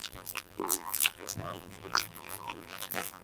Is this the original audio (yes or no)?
no